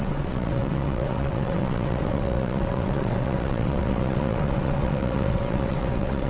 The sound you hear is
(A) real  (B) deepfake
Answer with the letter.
B